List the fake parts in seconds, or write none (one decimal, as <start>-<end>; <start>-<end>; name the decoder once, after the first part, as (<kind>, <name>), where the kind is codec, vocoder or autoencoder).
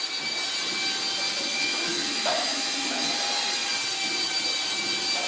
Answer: 1.5-3.1 (autoencoder, DAC-VAE)